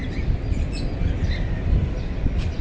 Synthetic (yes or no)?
no